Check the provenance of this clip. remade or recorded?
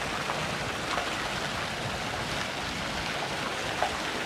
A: recorded